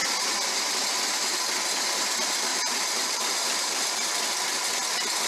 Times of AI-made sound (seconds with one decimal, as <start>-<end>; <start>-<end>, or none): 2.5-4.1